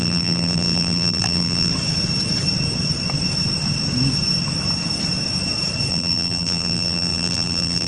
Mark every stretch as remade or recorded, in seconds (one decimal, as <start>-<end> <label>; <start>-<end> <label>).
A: 0.0-1.7 remade; 1.7-5.9 recorded; 5.9-7.9 remade